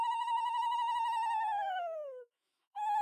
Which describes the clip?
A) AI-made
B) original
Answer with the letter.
A